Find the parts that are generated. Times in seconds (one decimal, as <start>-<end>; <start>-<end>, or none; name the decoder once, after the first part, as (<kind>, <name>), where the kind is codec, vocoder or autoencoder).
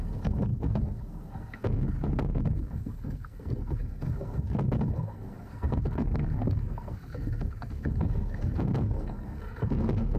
0.0-10.2 (codec, SNAC)